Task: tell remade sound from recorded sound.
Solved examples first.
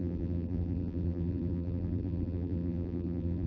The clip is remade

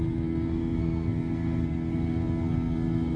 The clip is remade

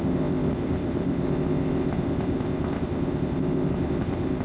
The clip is remade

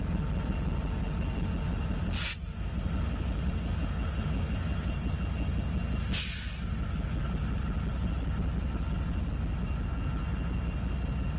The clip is recorded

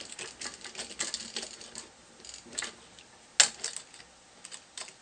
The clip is recorded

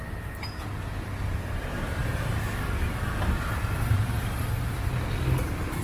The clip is recorded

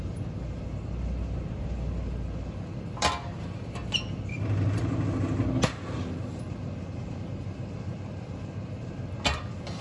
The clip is recorded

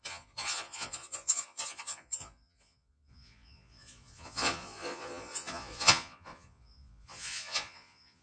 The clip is remade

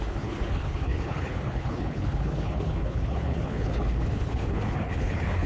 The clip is remade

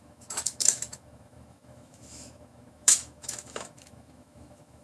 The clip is remade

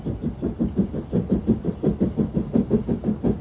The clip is recorded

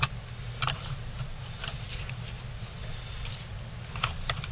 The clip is recorded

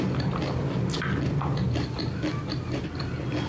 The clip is recorded